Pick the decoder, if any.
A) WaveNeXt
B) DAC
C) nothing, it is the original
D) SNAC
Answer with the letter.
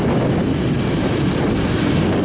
C